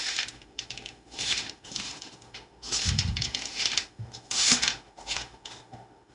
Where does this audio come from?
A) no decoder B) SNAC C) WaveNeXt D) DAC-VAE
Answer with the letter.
D